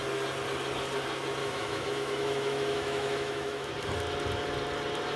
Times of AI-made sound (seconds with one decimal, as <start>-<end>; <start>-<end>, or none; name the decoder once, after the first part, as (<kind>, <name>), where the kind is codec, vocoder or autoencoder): 1.4-3.7 (autoencoder, DAC-VAE)